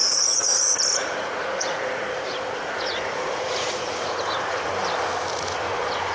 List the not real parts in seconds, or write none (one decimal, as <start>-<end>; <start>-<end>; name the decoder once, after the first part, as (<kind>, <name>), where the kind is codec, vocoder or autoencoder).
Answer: 0.0-4.7 (vocoder, Vocos); 5.3-6.1